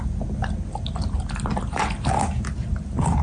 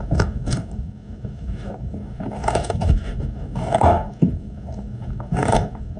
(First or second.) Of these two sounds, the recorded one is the first